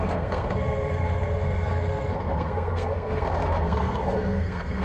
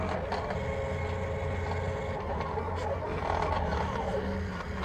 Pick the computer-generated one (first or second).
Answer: first